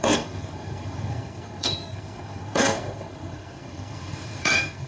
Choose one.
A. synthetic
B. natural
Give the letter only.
A